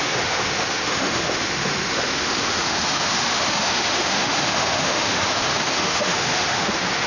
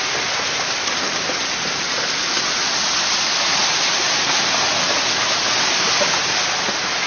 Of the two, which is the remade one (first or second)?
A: first